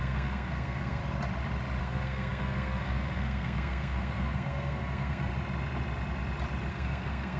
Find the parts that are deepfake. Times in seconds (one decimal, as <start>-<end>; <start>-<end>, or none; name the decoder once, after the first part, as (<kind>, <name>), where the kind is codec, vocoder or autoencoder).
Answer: 0.0-1.0 (codec, SNAC); 1.8-5.3; 6.7-7.4